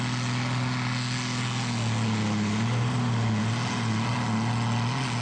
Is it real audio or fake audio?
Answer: real